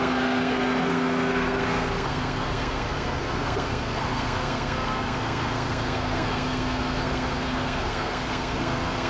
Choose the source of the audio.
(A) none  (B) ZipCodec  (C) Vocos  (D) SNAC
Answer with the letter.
D